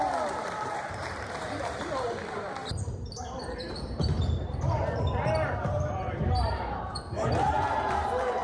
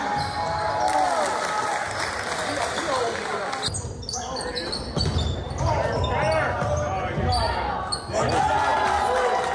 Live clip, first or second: second